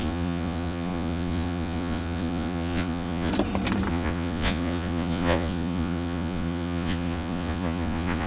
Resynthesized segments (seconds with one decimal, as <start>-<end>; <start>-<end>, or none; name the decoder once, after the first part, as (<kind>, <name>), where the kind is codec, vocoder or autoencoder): 0.0-3.3 (vocoder, Vocos); 3.9-8.3